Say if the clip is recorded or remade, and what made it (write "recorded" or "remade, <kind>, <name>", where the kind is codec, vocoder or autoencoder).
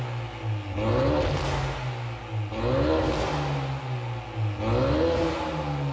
recorded